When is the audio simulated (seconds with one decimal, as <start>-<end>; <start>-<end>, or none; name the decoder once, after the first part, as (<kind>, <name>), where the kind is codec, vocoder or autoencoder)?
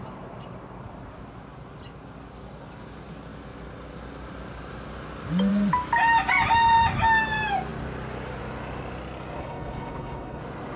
9.4-10.4 (codec, HILCodec)